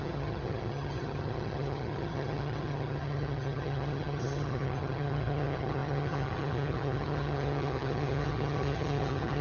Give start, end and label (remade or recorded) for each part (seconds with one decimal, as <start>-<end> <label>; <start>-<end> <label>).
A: 0.0-9.4 remade

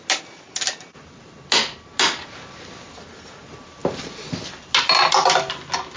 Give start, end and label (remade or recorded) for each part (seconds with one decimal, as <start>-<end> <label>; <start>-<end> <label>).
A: 0.0-6.0 recorded

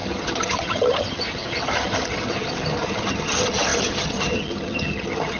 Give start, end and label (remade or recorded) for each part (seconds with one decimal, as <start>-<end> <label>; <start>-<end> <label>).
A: 0.0-5.4 remade

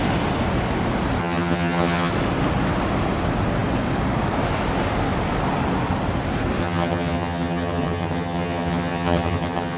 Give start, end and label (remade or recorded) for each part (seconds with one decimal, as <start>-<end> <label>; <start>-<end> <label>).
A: 0.0-1.2 recorded; 1.2-2.1 remade; 2.1-6.6 recorded; 6.6-9.8 remade

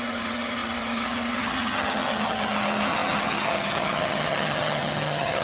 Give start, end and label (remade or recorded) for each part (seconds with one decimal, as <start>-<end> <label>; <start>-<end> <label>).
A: 0.0-5.4 remade